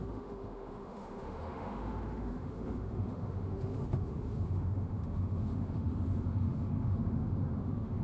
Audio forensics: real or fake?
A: fake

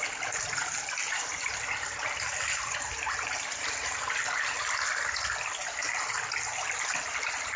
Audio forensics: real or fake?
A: real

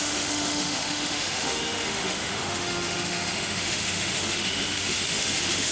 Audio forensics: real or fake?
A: fake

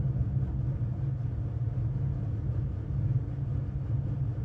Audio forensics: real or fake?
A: real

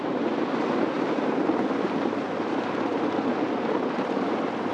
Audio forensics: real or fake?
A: real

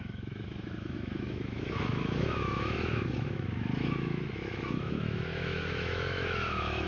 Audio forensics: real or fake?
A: fake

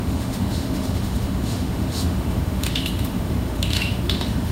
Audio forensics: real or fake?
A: fake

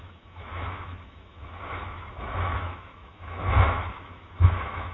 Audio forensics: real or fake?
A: fake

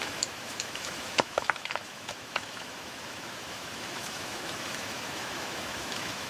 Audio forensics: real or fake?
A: fake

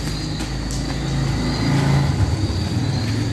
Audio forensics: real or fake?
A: real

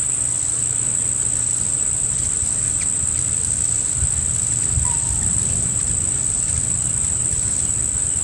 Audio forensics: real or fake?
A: real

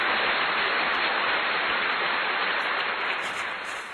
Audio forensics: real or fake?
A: real